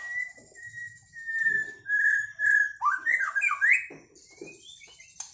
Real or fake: real